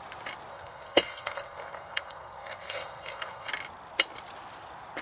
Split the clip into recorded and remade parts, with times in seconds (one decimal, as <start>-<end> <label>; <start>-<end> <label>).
0.0-0.5 recorded; 0.5-3.5 remade; 3.5-5.0 recorded